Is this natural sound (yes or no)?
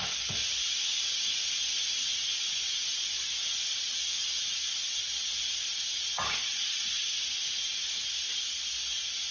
yes